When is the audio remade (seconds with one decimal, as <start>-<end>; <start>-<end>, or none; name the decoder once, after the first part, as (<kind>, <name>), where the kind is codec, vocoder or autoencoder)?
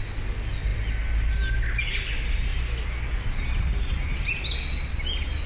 none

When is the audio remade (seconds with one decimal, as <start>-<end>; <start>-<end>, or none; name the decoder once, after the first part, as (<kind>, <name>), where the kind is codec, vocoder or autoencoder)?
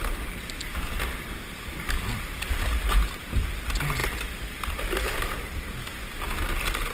none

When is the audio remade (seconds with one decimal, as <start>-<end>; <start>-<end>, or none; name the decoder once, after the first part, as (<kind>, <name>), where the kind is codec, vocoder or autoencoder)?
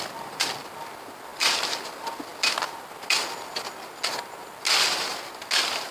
1.3-1.8 (vocoder, BigVGAN v2)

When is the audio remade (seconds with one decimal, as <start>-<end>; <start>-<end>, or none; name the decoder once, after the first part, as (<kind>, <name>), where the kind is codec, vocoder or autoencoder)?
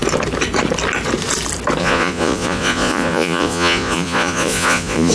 1.8-5.1 (vocoder, Vocos)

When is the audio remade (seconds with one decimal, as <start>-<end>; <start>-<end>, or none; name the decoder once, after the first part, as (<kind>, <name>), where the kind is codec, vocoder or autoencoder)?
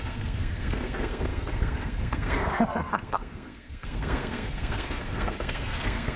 0.0-6.2 (codec, SNAC)